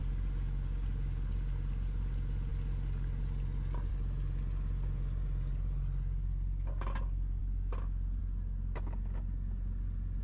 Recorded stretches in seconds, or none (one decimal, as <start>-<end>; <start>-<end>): 0.0-10.2